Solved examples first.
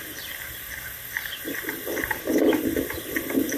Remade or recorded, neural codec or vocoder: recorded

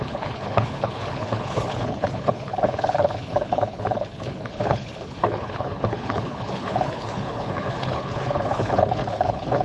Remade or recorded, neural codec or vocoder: remade, codec, HILCodec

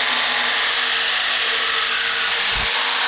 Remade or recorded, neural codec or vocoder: recorded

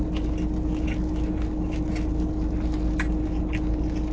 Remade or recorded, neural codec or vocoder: recorded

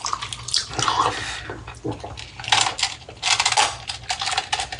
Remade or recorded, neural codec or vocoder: recorded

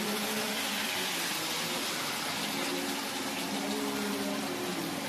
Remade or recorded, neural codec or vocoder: recorded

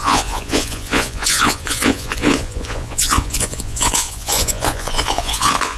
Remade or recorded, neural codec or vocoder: remade, vocoder, Vocos